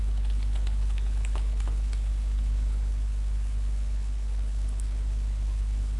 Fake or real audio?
fake